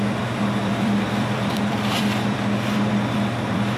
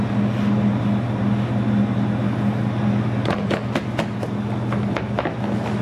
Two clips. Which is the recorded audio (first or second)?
second